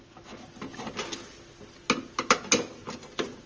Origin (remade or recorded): recorded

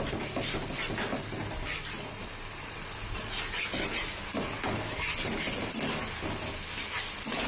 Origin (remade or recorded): recorded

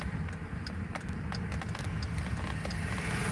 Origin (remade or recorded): recorded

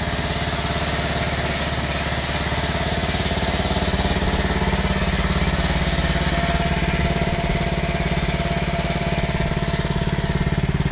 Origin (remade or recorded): recorded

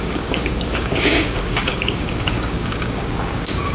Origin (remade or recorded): remade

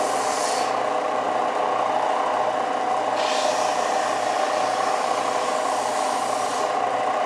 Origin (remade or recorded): recorded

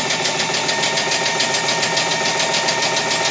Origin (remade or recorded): recorded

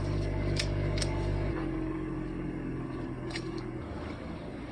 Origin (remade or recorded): remade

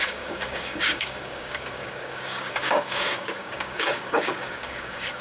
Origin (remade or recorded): remade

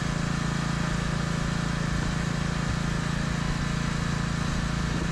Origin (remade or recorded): recorded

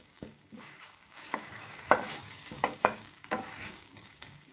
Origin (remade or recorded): remade